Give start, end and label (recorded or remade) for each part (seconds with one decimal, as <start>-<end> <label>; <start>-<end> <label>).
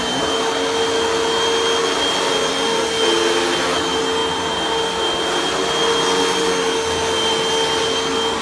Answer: 0.0-8.4 recorded